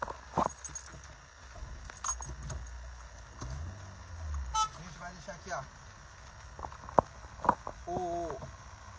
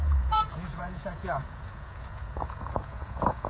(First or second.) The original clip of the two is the first